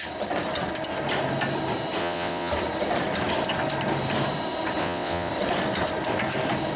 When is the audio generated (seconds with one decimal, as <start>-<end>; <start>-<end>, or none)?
2.0-2.5; 4.8-5.3